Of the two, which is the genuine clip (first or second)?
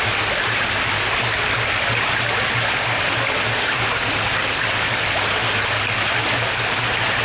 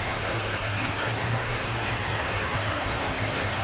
first